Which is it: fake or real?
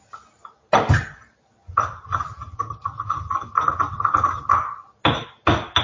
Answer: real